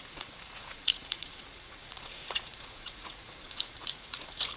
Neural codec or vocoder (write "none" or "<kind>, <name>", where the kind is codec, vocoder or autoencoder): vocoder, Vocos